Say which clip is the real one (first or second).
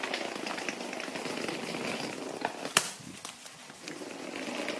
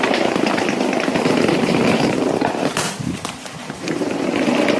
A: first